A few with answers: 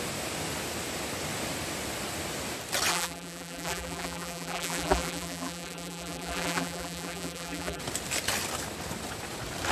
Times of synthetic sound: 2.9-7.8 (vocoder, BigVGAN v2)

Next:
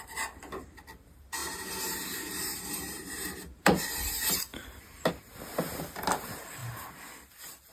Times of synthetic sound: 1.4-3.9 (vocoder, BigVGAN v2); 4.5-5.1

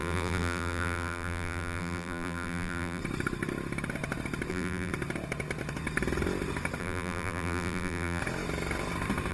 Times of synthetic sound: 0.0-3.0 (vocoder, BigVGAN v2); 4.5-4.9; 6.8-8.2

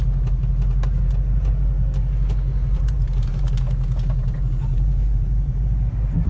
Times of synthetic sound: 2.5-6.3 (vocoder, BigVGAN v2)

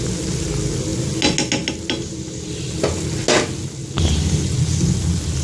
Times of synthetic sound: none

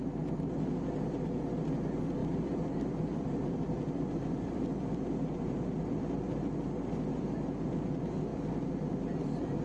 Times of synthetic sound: 2.2-4.5 (vocoder, BigVGAN v2)